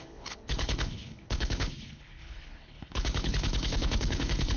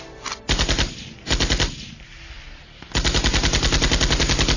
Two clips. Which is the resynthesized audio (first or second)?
first